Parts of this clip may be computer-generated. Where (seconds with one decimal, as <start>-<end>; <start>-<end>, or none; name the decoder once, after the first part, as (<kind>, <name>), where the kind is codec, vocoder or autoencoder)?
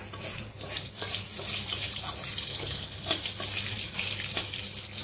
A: 2.5-3.1 (codec, HILCodec)